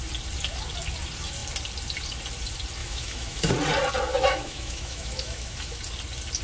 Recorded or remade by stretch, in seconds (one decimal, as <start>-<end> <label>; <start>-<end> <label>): 0.0-2.8 recorded; 2.8-3.5 remade; 3.5-4.1 recorded; 4.1-5.8 remade; 5.8-6.4 recorded